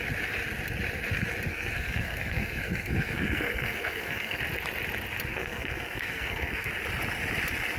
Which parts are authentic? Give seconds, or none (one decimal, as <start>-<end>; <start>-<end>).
0.0-1.5; 4.4-5.3; 6.7-7.8